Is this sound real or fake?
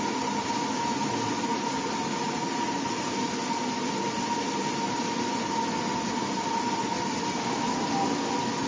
real